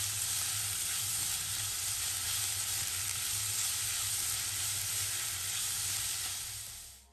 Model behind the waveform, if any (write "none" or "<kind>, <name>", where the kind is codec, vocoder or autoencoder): none